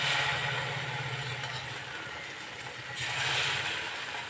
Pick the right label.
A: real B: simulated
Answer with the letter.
A